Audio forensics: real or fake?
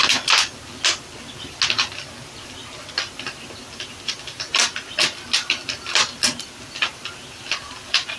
real